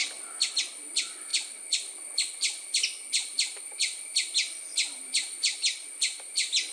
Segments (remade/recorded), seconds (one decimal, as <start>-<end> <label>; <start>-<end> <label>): 0.0-6.7 recorded